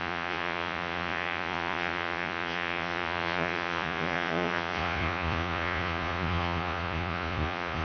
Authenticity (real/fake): fake